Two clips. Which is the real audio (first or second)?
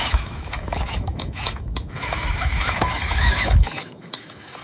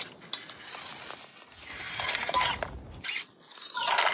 second